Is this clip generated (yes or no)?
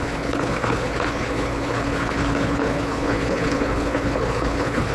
yes